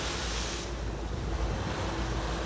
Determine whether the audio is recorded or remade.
recorded